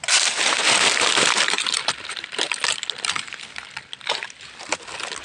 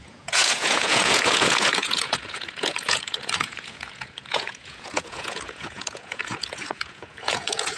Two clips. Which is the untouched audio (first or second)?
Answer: first